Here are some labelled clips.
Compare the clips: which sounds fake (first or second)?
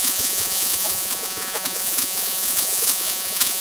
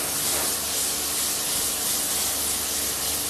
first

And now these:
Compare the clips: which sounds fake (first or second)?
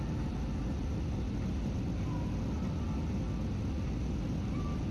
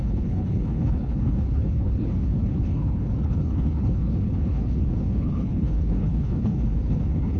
second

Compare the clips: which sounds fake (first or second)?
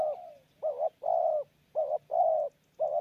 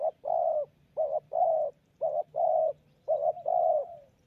second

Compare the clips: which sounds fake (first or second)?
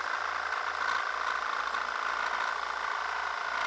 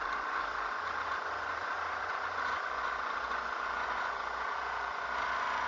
second